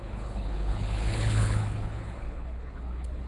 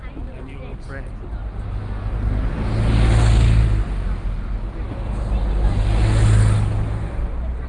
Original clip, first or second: second